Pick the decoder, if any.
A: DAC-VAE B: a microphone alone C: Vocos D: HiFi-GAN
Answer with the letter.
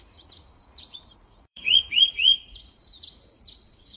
C